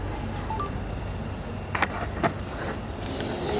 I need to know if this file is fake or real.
real